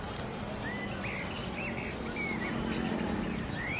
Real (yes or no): yes